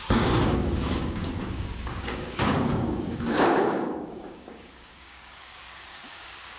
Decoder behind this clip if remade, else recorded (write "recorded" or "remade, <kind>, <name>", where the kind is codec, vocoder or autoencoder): remade, codec, DAC